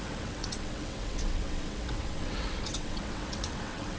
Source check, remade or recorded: remade